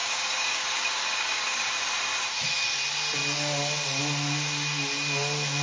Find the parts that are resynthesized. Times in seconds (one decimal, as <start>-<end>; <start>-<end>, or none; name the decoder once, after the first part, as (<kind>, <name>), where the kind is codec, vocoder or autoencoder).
0.0-1.7 (codec, DAC)